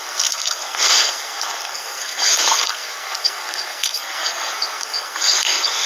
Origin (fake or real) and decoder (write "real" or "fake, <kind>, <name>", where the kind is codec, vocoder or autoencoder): fake, codec, SNAC